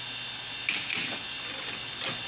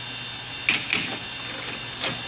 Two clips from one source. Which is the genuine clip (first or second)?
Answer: second